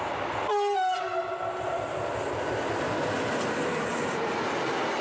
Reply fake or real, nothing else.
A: real